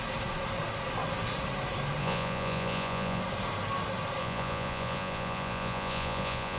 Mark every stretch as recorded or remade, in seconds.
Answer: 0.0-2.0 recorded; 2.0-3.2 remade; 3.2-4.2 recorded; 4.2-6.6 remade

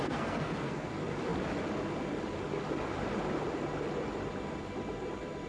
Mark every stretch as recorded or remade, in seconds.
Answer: 0.0-0.9 remade; 0.9-5.5 recorded

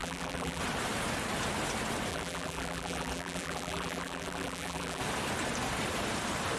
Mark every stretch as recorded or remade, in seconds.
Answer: 0.0-0.6 remade; 0.6-2.1 recorded; 2.1-5.0 remade; 5.0-6.6 recorded